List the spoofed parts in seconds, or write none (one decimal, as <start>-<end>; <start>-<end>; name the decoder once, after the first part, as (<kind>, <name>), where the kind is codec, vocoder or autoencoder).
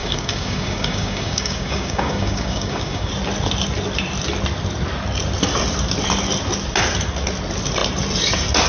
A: 0.0-3.1 (codec, DAC)